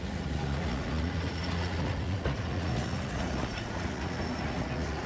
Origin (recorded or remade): remade